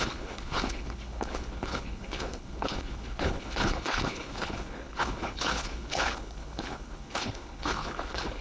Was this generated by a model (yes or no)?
yes